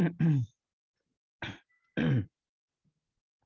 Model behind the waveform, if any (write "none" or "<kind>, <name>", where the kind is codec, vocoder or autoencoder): none